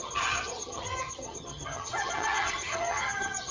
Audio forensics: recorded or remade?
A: remade